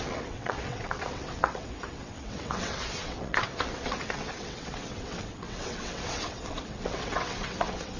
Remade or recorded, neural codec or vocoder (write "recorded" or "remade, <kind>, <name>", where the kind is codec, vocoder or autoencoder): remade, vocoder, WaveNeXt